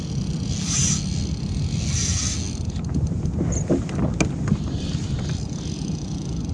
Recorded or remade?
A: recorded